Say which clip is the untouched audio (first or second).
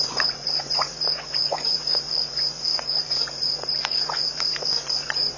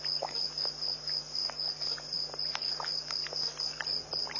second